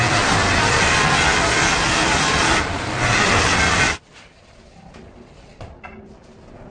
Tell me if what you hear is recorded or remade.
recorded